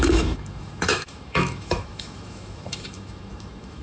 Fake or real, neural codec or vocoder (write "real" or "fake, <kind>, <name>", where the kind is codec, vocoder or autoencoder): fake, autoencoder, DAC-VAE